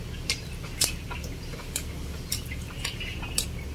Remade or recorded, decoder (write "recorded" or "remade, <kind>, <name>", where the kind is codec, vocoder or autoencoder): recorded